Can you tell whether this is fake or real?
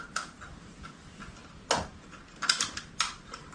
real